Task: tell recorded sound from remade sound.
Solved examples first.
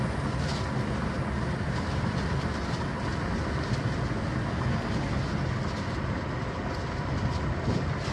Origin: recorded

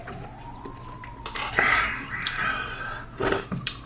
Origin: recorded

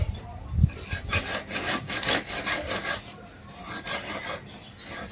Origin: recorded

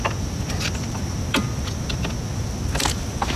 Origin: recorded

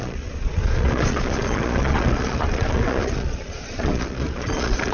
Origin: remade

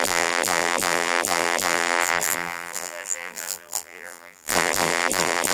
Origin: remade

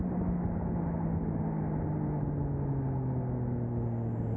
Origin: recorded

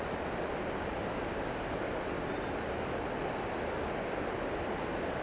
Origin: recorded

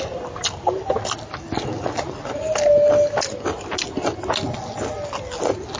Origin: recorded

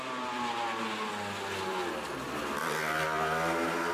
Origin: recorded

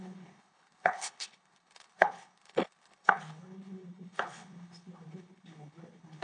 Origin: remade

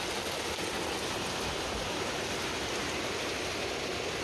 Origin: recorded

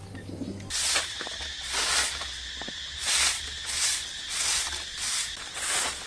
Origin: recorded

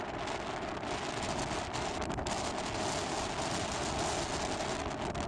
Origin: recorded